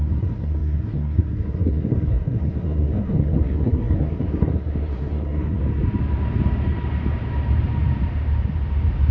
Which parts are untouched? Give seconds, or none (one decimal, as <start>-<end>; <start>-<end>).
5.6-9.1